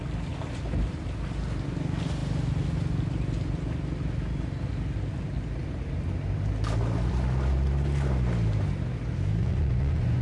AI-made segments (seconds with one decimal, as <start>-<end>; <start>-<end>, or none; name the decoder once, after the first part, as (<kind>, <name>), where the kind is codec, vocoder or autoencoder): 9.4-10.2 (vocoder, Vocos)